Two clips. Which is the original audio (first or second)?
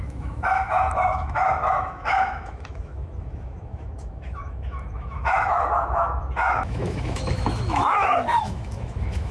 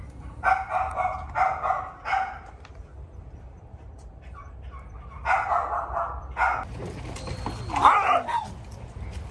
second